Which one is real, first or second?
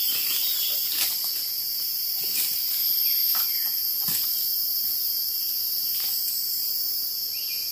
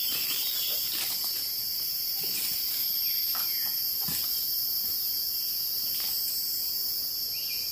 first